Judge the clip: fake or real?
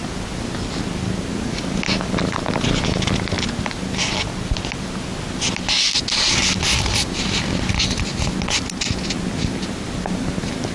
real